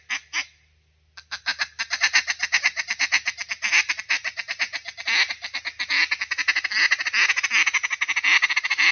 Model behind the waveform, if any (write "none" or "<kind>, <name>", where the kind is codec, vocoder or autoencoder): none